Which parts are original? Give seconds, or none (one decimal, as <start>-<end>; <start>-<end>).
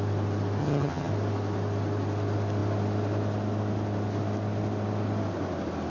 0.0-0.6; 1.1-5.9